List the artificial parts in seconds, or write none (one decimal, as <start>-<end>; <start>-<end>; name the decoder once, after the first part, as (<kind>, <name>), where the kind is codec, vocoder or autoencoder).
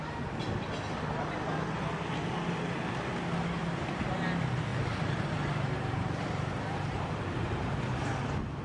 3.6-4.1 (vocoder, BigVGAN v2); 4.7-7.7